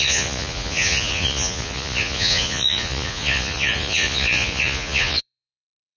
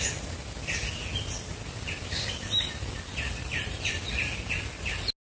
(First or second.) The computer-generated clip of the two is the first